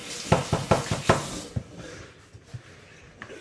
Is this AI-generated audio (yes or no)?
no